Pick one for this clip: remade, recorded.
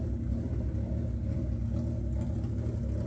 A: recorded